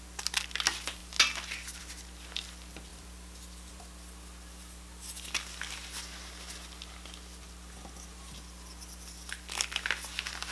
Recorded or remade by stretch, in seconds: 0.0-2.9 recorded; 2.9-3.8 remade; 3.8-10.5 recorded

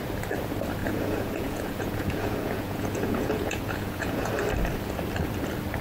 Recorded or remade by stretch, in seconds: 0.0-0.8 recorded; 0.8-4.3 remade; 4.3-5.8 recorded

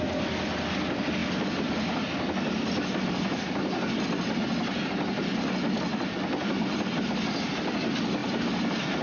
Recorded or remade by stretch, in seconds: 0.0-9.0 recorded